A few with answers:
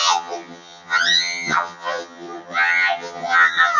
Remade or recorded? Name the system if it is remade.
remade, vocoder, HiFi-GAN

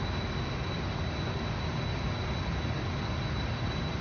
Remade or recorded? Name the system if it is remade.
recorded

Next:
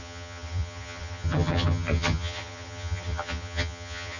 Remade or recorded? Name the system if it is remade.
remade, vocoder, HiFi-GAN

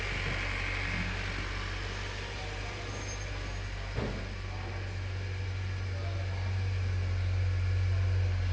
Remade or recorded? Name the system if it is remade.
recorded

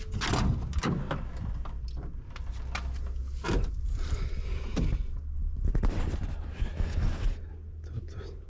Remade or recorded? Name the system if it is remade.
recorded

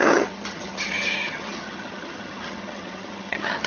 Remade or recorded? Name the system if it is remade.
remade, vocoder, HiFi-GAN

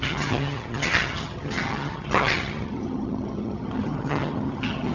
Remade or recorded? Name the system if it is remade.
remade, vocoder, HiFi-GAN